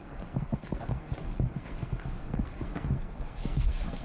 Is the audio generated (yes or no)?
yes